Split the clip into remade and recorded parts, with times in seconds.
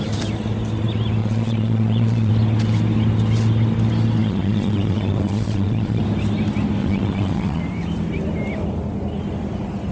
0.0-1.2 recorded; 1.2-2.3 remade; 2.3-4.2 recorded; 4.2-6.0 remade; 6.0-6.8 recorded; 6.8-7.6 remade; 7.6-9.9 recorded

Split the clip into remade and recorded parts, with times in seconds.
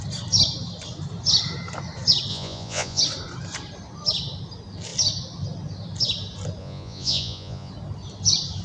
0.0-2.3 recorded; 2.3-3.0 remade; 3.0-6.6 recorded; 6.6-7.7 remade; 7.7-8.6 recorded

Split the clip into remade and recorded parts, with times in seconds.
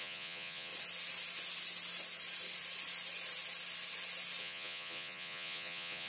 0.0-0.7 remade; 0.7-4.4 recorded; 4.4-6.1 remade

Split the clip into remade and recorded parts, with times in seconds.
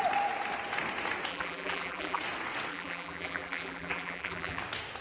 0.0-1.3 recorded; 1.3-2.2 remade; 2.2-2.7 recorded; 2.7-4.6 remade; 4.6-5.0 recorded